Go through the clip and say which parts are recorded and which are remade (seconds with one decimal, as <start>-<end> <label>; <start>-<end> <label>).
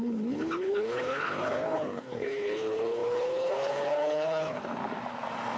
0.0-4.8 remade; 4.8-5.6 recorded